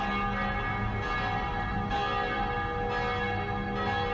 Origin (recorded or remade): recorded